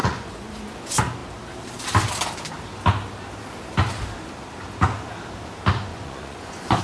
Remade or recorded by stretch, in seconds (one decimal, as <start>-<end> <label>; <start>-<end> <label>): 0.0-0.5 remade; 0.5-5.9 recorded; 5.9-6.8 remade